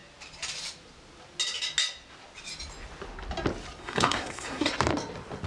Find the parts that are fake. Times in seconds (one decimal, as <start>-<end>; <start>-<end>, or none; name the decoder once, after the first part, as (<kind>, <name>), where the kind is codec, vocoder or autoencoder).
3.8-4.7 (codec, SNAC)